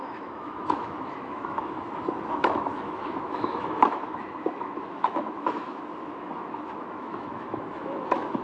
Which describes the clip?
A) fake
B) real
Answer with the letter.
A